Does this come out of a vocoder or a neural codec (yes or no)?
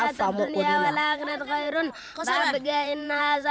yes